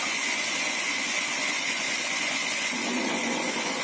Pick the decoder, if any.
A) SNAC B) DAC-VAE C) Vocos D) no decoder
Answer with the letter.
C